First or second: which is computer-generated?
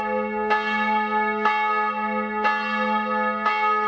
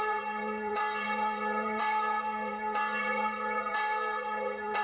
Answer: second